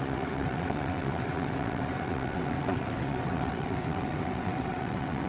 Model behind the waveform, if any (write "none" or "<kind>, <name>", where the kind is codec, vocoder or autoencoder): vocoder, WaveNeXt